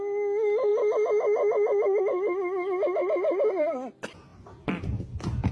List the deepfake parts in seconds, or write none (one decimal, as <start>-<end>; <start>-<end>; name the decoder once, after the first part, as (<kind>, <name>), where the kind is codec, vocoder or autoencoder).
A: 4.3-5.0 (vocoder, BigVGAN v2)